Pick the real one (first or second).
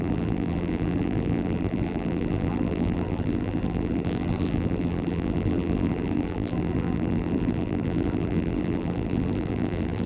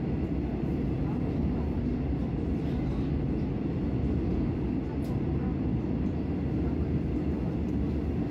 second